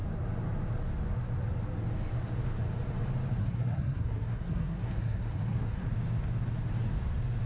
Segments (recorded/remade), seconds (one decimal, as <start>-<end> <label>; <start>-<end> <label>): 0.0-3.4 recorded; 3.4-5.9 remade; 5.9-7.5 recorded